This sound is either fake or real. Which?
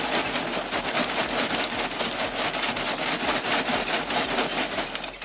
real